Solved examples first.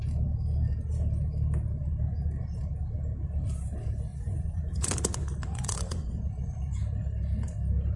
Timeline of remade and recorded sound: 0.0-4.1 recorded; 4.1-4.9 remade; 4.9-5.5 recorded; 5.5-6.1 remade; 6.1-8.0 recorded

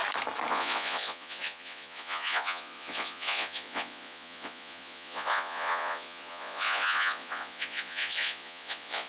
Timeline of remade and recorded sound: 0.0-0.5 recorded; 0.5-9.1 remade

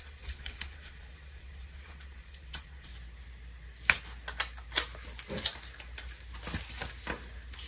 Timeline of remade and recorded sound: 0.0-2.9 remade; 2.9-7.7 recorded

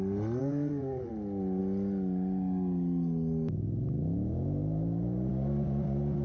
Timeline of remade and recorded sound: 0.0-0.4 recorded; 0.4-1.1 remade; 1.1-6.2 recorded

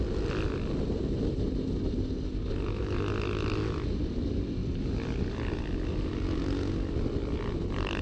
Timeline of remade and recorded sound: 0.0-8.0 recorded

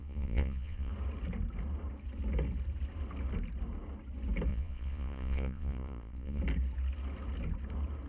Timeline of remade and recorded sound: 0.0-0.9 remade; 0.9-4.5 recorded; 4.5-6.4 remade; 6.4-8.1 recorded

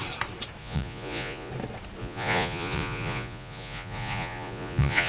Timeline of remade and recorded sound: 0.0-0.6 recorded; 0.6-1.5 remade; 1.5-2.0 recorded; 2.0-5.1 remade

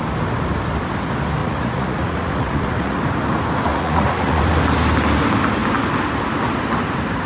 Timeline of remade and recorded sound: 0.0-1.4 recorded; 1.4-3.0 remade; 3.0-3.7 recorded; 3.7-4.4 remade; 4.4-7.3 recorded